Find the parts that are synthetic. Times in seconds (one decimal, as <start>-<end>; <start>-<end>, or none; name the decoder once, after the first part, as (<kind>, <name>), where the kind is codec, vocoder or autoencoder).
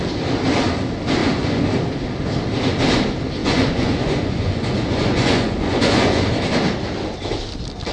1.2-1.7 (vocoder, Vocos); 3.4-6.2